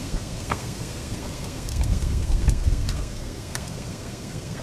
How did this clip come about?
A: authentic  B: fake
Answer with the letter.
B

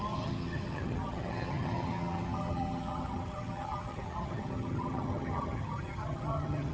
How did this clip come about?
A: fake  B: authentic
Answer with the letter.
A